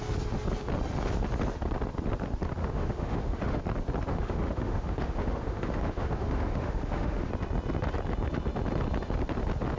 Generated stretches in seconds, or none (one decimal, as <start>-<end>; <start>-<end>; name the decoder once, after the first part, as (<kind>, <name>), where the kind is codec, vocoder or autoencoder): 2.6-3.6 (autoencoder, DAC-VAE); 4.1-7.3